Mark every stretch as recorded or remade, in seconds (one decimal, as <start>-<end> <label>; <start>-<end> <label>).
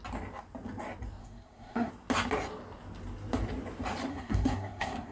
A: 0.0-1.2 recorded; 1.2-1.9 remade; 1.9-4.1 recorded; 4.1-5.1 remade